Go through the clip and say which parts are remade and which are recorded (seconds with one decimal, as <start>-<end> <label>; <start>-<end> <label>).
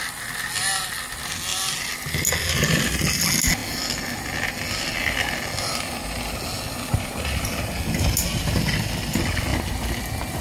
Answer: 0.0-10.4 recorded